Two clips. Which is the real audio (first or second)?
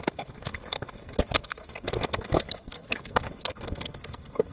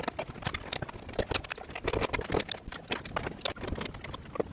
second